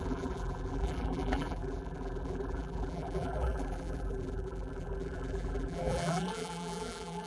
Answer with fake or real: fake